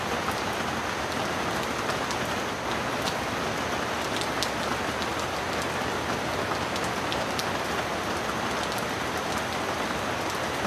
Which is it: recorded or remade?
recorded